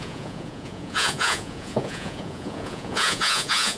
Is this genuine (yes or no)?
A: no